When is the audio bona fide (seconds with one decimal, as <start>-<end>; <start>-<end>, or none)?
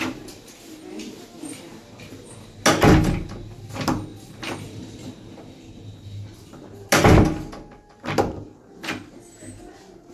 0.0-4.1; 5.4-10.1